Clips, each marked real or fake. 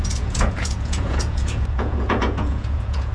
fake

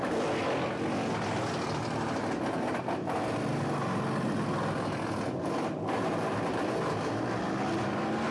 real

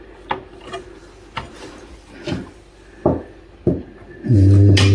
real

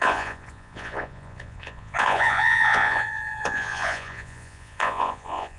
fake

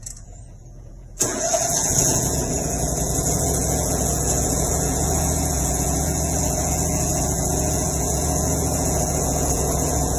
fake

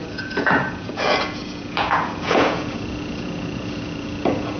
fake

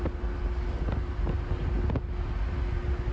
real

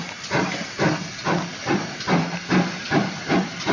real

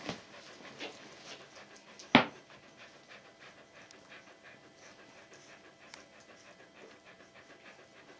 real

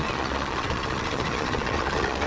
fake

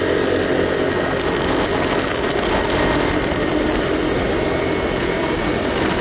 real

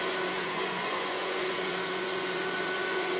fake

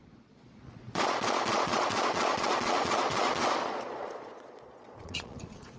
fake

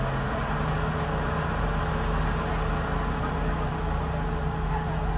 real